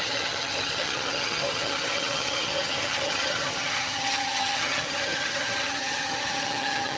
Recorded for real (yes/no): no